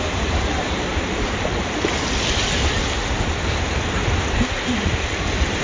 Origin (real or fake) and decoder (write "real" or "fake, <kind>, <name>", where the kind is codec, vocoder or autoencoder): real